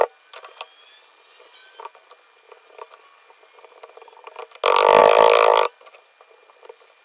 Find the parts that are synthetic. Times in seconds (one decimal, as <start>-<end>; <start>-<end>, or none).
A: none